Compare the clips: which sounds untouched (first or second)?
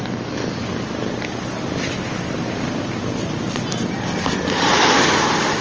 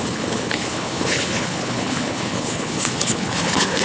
first